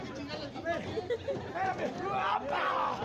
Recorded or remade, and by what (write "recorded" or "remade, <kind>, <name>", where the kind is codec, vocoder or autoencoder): recorded